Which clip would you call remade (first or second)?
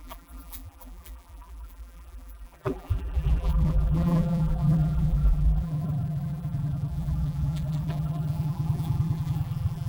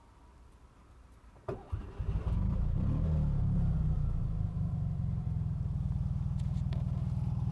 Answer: first